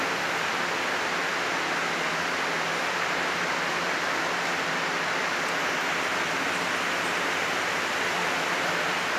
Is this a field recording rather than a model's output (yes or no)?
yes